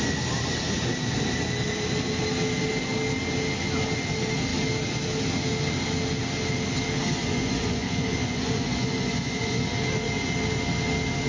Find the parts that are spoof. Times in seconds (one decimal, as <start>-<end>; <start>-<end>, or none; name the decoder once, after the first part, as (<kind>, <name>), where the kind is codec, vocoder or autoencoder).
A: 7.2-9.6 (vocoder, Vocos)